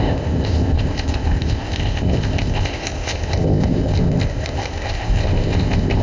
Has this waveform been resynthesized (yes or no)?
yes